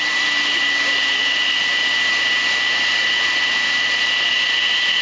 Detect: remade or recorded recorded